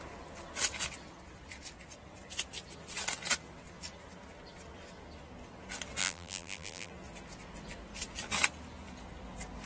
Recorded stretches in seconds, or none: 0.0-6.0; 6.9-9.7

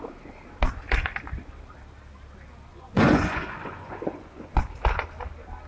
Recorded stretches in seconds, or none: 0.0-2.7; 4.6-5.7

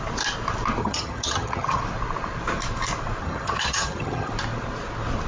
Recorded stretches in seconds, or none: 0.0-0.8; 1.8-3.2; 4.3-5.3